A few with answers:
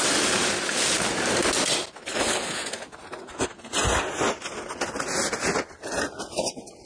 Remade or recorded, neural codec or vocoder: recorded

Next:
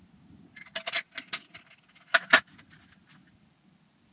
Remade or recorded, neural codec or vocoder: recorded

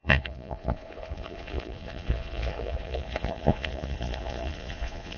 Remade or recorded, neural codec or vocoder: remade, vocoder, Vocos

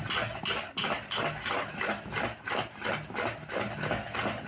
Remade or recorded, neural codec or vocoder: recorded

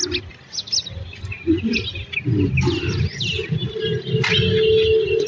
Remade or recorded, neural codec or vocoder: recorded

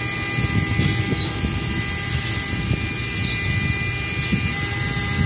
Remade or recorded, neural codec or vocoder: recorded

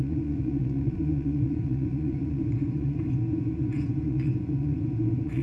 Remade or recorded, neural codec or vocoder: remade, vocoder, Vocos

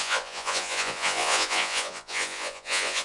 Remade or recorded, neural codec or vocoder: remade, vocoder, Vocos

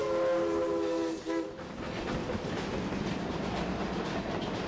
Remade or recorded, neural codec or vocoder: recorded